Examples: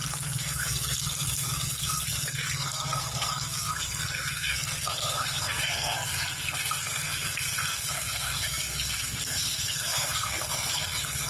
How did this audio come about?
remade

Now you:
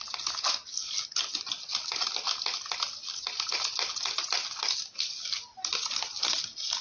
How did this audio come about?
recorded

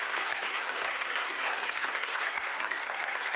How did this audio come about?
remade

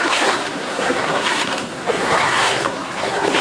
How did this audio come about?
remade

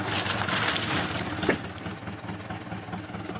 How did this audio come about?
recorded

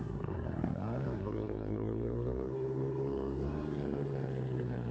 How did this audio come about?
remade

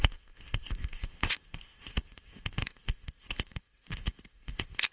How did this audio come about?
remade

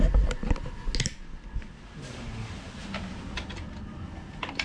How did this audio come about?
recorded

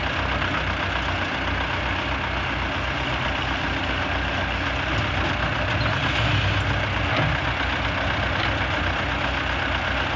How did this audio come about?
recorded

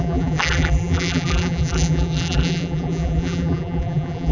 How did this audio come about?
remade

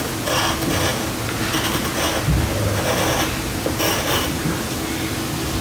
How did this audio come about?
recorded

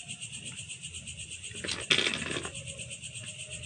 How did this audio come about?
recorded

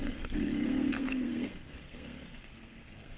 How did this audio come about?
remade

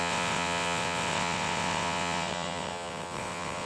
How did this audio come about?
remade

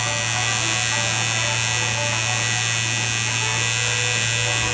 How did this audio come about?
recorded